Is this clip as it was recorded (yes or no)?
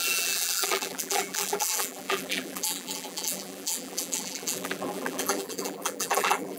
no